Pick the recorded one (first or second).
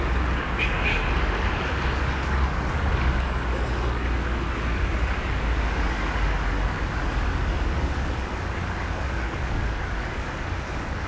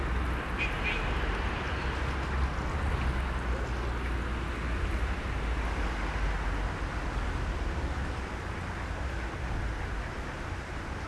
second